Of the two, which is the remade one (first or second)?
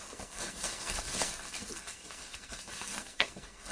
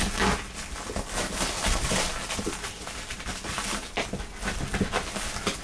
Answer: first